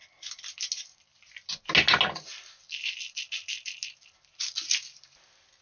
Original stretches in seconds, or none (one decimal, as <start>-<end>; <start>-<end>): 0.0-5.6

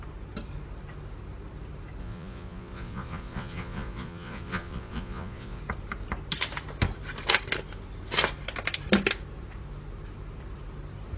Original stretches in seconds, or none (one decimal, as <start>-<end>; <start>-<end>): 0.0-2.0; 5.6-11.2

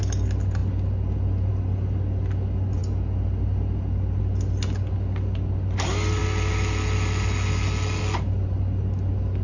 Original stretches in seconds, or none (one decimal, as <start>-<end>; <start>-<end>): 0.0-9.4

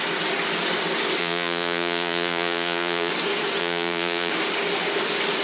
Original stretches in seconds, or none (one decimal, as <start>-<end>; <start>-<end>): 0.0-1.2; 3.1-3.6; 4.3-5.4

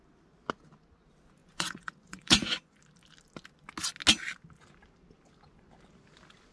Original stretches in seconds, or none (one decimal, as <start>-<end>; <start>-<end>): 0.0-1.4; 2.8-6.5